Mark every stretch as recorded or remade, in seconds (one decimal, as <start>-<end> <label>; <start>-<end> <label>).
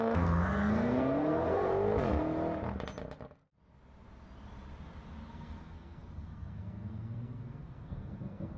0.0-1.7 remade; 1.7-5.3 recorded; 5.3-8.6 remade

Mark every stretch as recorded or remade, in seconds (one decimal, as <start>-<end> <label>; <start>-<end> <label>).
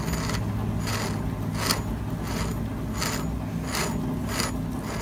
0.0-5.0 recorded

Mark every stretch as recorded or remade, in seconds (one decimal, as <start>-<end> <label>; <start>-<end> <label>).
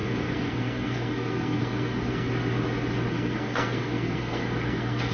0.0-2.3 remade; 2.3-3.1 recorded; 3.1-5.1 remade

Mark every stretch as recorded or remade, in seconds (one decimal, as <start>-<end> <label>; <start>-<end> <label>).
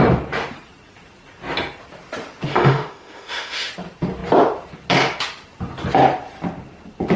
0.0-2.5 recorded; 2.5-3.7 remade; 3.7-7.2 recorded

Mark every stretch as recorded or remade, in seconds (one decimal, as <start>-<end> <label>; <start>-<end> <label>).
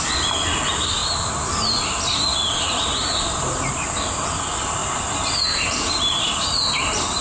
0.0-7.2 recorded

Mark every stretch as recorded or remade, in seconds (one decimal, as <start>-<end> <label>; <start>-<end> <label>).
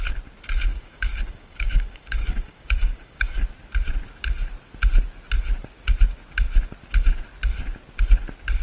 0.0-0.7 recorded; 0.7-3.4 remade; 3.4-8.6 recorded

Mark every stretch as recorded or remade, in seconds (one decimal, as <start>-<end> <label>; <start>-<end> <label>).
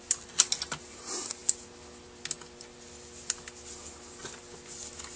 0.0-5.2 recorded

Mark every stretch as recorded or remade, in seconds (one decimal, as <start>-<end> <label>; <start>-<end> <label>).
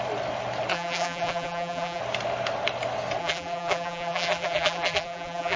0.0-0.7 recorded; 0.7-2.0 remade; 2.0-3.2 recorded; 3.2-5.6 remade